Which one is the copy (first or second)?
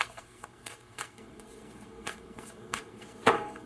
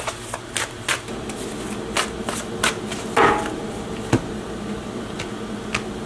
first